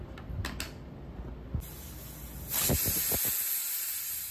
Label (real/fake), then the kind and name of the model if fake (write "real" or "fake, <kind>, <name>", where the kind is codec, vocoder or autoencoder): real